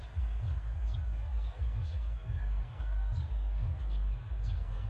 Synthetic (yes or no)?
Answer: yes